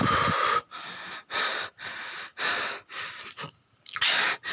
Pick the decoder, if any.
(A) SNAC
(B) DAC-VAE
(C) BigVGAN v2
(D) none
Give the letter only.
D